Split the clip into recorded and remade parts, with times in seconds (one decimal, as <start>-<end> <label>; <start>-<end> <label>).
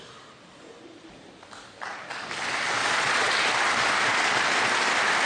0.0-2.8 recorded; 2.8-3.3 remade; 3.3-5.3 recorded